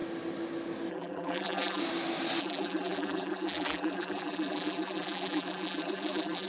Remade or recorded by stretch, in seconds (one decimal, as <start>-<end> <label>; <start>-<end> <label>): 0.0-0.9 recorded; 0.9-1.8 remade; 1.8-2.4 recorded; 2.4-6.5 remade